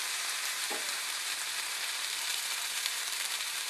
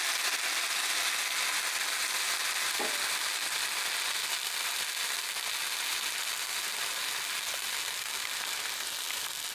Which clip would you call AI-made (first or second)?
first